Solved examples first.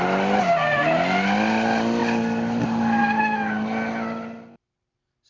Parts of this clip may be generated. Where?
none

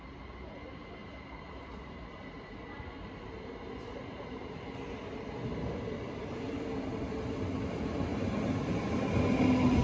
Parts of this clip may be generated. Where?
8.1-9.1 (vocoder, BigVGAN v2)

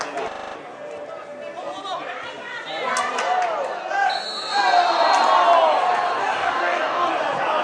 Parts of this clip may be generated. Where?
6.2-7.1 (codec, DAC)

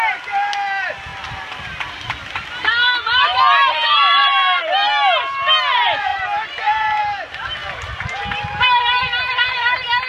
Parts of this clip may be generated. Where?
none

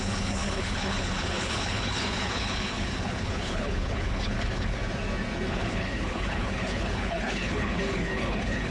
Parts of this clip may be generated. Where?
0.0-4.8 (codec, HILCodec); 5.5-8.7

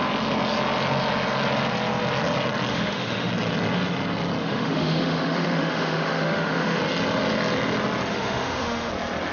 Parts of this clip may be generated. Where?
2.7-3.3 (autoencoder, DAC-VAE); 4.4-6.8; 8.1-8.9